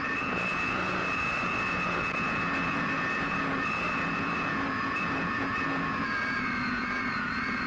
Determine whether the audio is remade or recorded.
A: remade